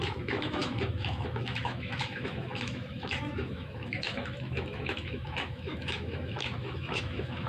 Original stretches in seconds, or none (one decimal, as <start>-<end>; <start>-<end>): none